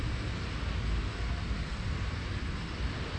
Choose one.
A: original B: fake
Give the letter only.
A